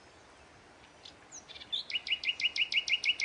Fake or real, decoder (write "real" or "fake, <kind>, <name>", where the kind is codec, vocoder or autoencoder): real